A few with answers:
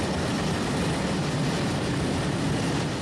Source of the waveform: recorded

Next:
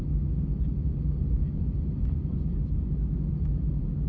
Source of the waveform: recorded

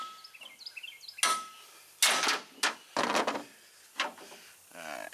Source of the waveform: recorded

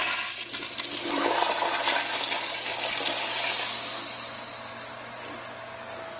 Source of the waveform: recorded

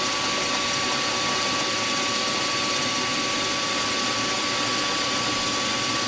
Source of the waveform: recorded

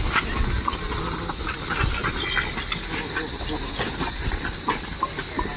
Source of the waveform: recorded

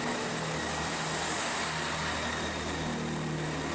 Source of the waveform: recorded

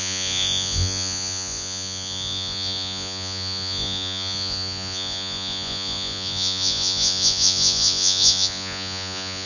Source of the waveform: remade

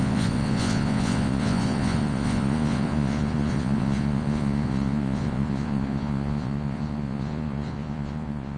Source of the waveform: remade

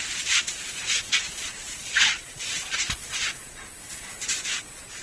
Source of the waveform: remade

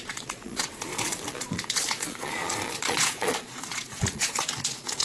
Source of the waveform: remade